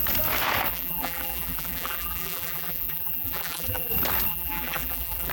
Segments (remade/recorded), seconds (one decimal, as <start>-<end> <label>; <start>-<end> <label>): 0.0-0.7 recorded; 0.7-3.9 remade; 3.9-4.3 recorded; 4.3-5.3 remade